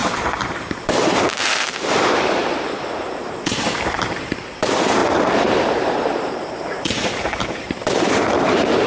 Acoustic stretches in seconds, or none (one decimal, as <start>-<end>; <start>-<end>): none